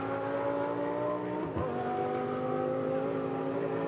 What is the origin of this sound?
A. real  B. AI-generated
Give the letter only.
A